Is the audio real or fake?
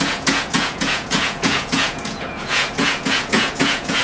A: fake